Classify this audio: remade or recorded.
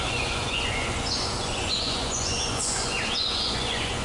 remade